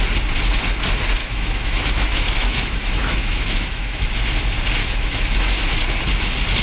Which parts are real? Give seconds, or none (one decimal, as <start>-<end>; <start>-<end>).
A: 0.0-1.2; 4.0-4.8; 5.6-6.6